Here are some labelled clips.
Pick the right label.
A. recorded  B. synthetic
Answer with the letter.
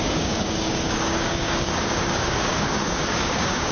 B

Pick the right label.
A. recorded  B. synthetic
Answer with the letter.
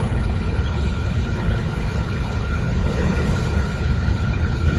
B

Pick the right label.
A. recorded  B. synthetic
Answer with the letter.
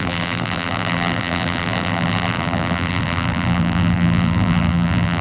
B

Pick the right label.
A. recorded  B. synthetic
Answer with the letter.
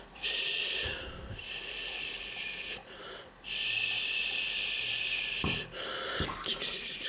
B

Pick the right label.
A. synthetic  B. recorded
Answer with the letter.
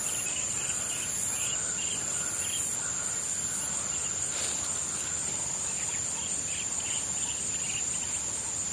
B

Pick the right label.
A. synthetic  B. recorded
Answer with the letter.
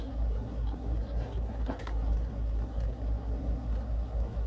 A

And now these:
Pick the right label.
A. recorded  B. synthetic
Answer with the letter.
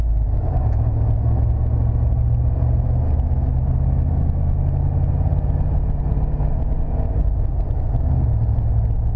A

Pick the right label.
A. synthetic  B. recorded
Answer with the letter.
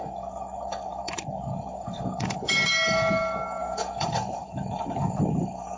A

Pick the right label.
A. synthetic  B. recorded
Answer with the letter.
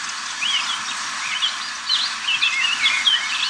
B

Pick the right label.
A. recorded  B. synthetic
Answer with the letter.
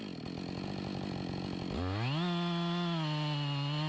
A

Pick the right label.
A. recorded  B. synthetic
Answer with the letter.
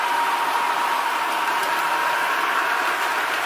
B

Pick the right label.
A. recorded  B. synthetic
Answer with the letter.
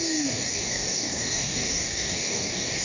B